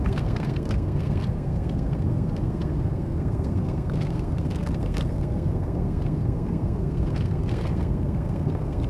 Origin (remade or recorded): remade